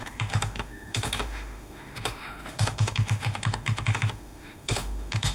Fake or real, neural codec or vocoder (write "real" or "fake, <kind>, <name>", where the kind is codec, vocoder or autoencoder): fake, autoencoder, DAC-VAE